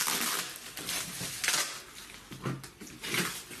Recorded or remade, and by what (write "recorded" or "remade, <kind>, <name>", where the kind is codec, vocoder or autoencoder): recorded